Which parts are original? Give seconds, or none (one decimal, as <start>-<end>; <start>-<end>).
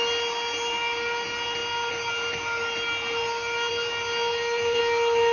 0.0-5.3